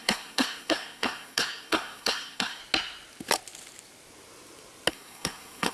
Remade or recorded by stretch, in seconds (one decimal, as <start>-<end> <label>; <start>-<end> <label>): 0.0-2.6 remade; 2.6-4.9 recorded; 4.9-5.7 remade